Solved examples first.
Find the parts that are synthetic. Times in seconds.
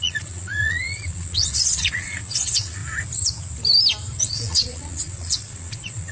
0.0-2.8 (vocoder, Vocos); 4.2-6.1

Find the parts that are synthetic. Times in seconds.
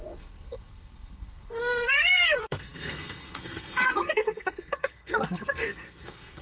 0.0-6.4 (codec, SNAC)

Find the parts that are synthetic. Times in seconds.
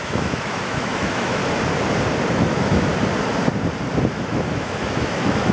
0.0-1.4 (autoencoder, DAC-VAE); 2.3-2.9; 4.1-5.5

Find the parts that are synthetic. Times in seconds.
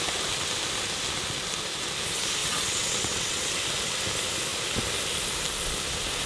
2.4-3.5 (vocoder, WaveNeXt)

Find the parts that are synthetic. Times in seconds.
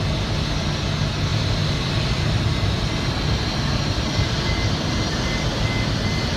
1.3-4.9 (vocoder, BigVGAN v2)